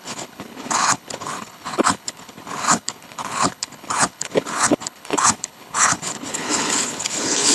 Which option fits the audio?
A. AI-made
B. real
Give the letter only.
A